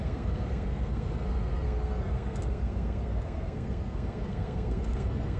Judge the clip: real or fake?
fake